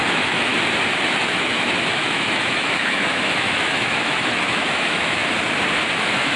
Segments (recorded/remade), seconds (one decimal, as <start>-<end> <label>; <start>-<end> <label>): 0.0-0.5 remade; 0.5-1.1 recorded; 1.1-5.2 remade; 5.2-6.0 recorded; 6.0-6.4 remade